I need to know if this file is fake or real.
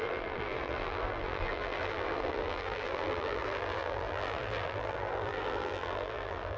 fake